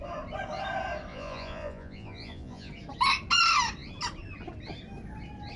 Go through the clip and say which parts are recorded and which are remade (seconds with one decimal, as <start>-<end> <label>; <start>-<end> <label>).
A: 0.0-1.1 recorded; 1.1-2.7 remade; 2.7-5.6 recorded